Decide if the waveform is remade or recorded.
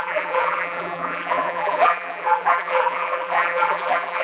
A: remade